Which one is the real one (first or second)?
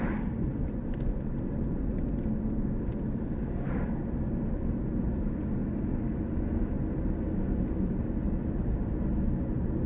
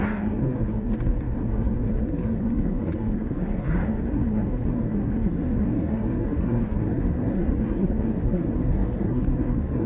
first